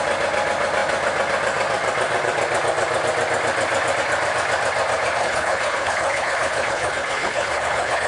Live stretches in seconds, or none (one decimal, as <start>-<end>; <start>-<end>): 0.0-5.2